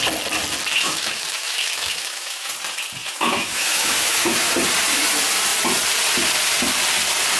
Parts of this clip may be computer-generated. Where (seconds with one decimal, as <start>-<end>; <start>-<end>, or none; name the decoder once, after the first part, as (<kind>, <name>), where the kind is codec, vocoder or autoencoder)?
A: 0.7-2.5 (autoencoder, DAC-VAE); 3.0-4.5